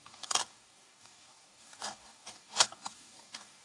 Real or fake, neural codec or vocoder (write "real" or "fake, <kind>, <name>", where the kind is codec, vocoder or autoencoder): fake, codec, DAC